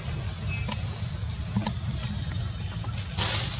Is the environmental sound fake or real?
real